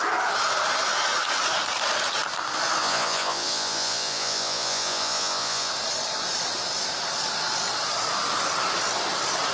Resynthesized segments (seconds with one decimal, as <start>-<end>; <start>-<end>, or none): 2.8-5.7